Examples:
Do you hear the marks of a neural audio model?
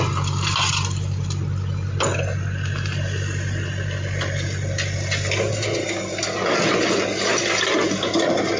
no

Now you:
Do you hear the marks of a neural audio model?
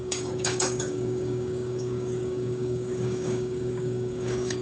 yes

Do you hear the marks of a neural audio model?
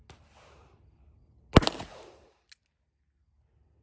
no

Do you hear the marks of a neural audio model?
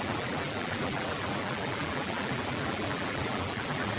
yes